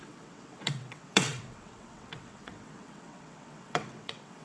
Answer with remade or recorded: remade